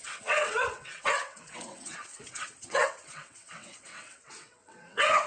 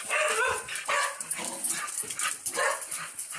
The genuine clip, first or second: second